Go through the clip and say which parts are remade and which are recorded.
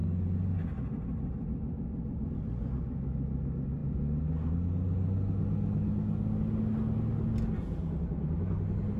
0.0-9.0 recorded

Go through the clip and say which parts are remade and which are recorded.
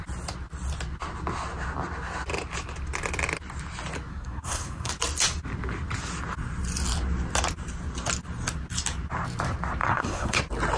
0.0-4.1 recorded; 4.1-4.9 remade; 4.9-9.8 recorded; 9.8-10.4 remade; 10.4-10.8 recorded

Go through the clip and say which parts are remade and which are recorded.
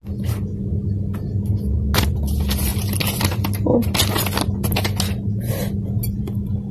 0.0-6.7 recorded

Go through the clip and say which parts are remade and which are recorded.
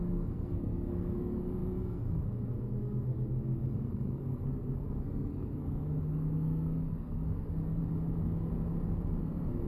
0.0-7.8 remade; 7.8-9.2 recorded; 9.2-9.7 remade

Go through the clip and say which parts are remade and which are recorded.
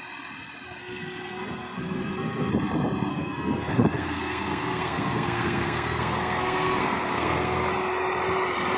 0.0-0.8 recorded; 0.8-2.5 remade; 2.5-3.1 recorded; 3.1-7.7 remade; 7.7-8.8 recorded